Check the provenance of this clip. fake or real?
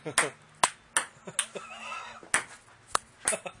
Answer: real